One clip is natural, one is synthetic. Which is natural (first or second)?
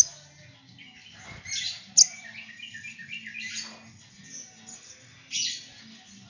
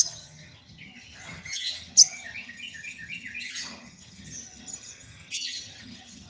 first